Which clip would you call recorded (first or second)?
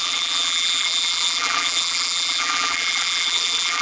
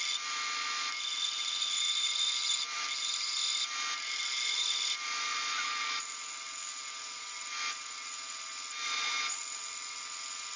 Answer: second